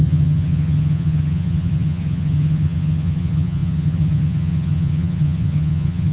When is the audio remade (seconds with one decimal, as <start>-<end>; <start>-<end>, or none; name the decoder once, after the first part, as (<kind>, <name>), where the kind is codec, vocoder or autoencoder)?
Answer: 0.0-6.1 (vocoder, HiFi-GAN)